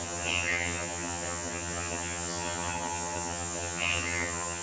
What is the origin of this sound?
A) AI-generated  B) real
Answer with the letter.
A